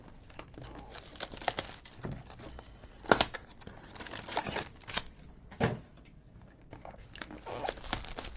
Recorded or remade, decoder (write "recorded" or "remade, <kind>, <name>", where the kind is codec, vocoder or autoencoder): recorded